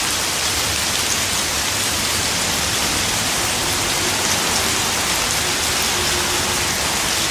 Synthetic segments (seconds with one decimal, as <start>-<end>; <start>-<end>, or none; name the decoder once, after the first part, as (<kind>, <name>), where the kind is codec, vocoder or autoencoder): 1.5-4.3 (vocoder, BigVGAN v2)